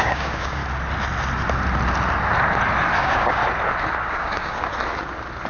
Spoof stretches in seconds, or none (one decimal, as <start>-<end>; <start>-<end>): 0.0-0.6; 3.0-3.4; 4.1-4.7